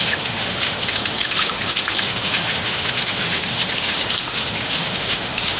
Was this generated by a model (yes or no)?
yes